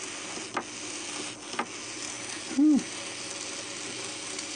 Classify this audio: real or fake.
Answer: real